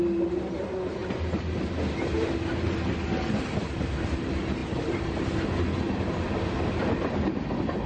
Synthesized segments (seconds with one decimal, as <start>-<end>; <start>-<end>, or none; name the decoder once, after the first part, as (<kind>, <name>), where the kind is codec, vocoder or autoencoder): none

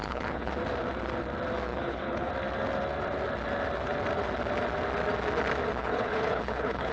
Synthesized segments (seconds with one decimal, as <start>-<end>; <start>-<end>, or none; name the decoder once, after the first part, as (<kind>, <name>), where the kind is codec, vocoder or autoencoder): 0.0-0.5 (codec, HILCodec); 1.7-2.3; 5.8-6.9

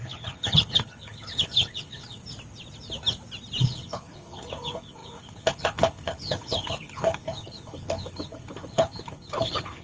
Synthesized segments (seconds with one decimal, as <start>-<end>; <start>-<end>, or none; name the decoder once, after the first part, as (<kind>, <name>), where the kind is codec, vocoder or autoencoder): 0.0-2.2 (codec, HILCodec); 3.6-9.8